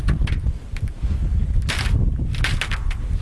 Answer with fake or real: real